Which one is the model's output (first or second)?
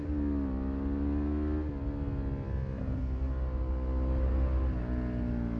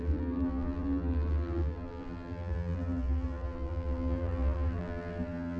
second